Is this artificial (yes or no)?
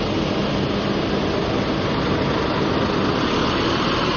no